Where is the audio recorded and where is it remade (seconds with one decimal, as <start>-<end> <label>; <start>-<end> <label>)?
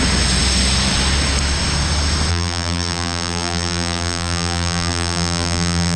0.0-2.3 recorded; 2.3-6.0 remade